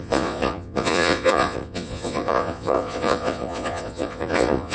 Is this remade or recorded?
remade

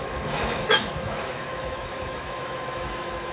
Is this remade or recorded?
remade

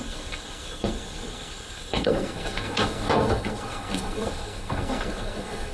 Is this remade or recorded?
remade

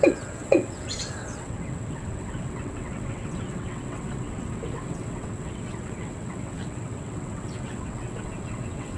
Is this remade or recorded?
remade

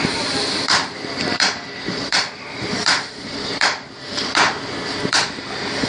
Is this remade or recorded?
remade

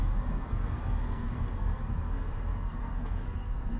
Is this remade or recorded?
remade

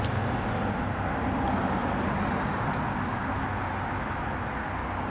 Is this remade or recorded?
recorded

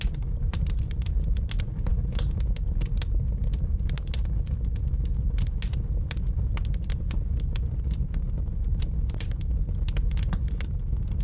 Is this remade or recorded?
recorded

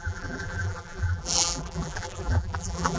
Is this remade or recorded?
remade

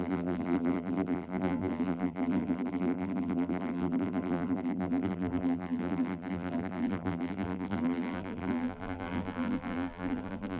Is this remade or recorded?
remade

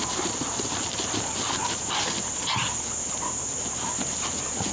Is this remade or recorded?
recorded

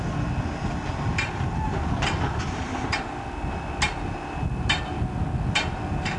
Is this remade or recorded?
recorded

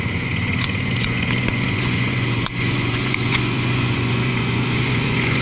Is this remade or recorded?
remade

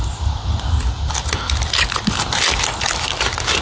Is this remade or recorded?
recorded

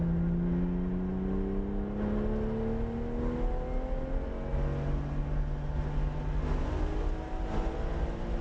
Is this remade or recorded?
recorded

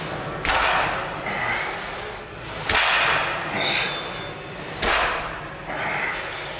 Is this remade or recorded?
recorded